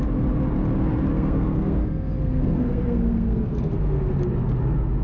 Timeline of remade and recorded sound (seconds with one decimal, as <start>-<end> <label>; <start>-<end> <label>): 0.0-1.1 recorded; 1.1-4.1 remade; 4.1-5.0 recorded